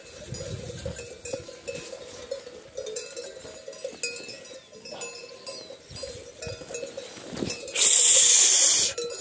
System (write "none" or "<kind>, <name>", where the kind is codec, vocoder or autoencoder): none